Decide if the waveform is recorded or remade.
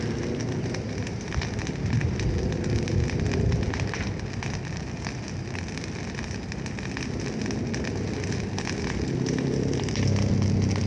recorded